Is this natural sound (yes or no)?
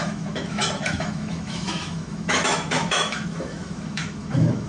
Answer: no